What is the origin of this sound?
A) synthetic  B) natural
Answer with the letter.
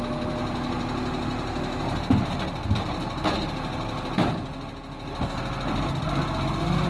B